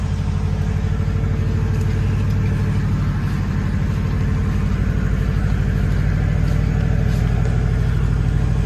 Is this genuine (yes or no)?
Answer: yes